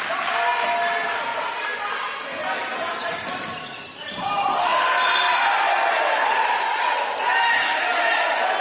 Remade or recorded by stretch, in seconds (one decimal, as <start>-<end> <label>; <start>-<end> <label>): 0.0-1.3 recorded; 1.3-2.2 remade; 2.2-2.7 recorded; 2.7-6.4 remade; 6.4-8.6 recorded